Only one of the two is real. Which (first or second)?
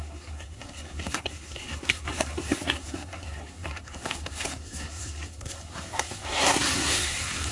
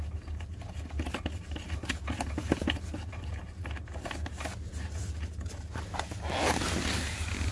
second